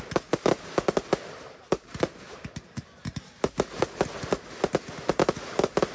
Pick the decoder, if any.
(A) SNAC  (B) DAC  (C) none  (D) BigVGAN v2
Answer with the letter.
C